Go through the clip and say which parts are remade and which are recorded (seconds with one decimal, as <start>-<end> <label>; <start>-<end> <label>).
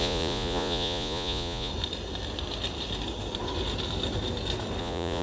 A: 0.0-1.7 remade; 1.7-4.8 recorded; 4.8-5.2 remade